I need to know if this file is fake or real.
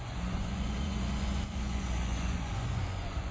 fake